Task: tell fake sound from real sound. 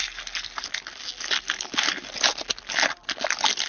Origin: real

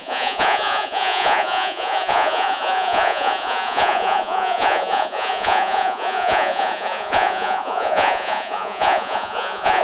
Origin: fake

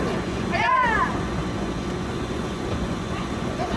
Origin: fake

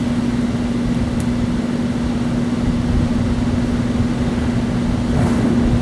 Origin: real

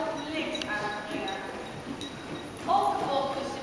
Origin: real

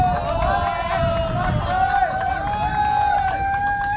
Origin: real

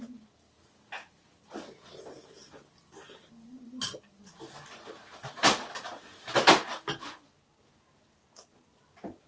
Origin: real